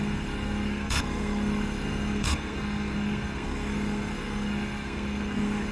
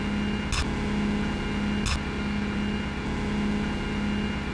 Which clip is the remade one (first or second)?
first